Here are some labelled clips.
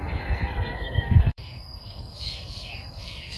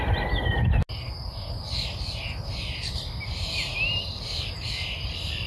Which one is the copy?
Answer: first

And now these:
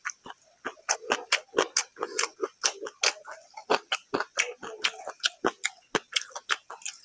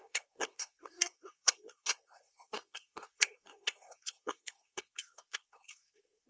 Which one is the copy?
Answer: second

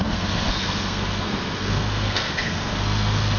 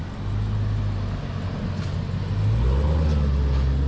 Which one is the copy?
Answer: first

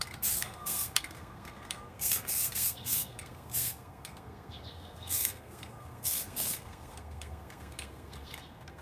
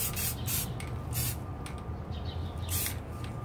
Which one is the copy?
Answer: first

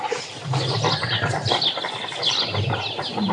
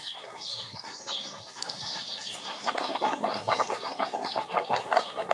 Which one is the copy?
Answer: second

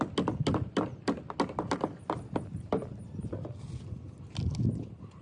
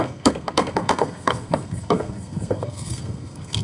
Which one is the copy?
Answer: second